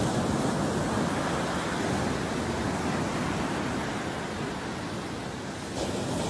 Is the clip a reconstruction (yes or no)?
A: no